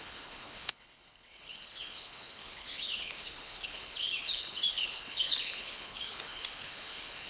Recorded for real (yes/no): no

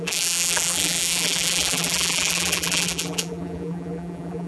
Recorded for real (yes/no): no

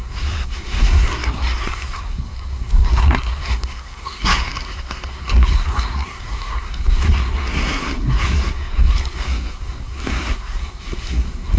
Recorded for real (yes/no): no